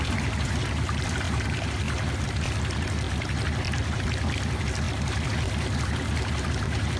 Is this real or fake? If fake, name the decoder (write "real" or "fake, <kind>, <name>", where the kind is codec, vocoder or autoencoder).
real